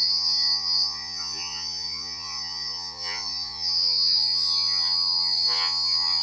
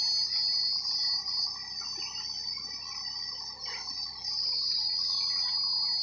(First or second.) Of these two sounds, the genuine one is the second